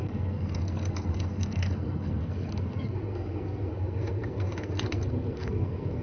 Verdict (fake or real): fake